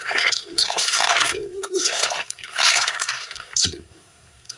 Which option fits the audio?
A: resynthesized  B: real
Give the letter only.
A